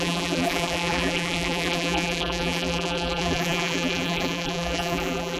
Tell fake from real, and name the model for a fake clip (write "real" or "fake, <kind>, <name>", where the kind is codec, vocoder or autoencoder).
fake, vocoder, BigVGAN v2